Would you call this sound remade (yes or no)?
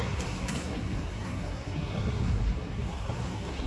yes